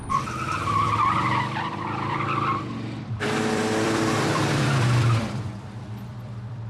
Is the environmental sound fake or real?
fake